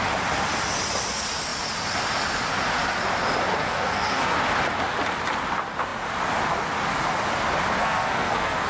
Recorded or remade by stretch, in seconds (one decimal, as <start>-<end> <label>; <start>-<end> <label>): 0.0-3.6 recorded; 3.6-4.4 remade; 4.4-7.8 recorded; 7.8-8.7 remade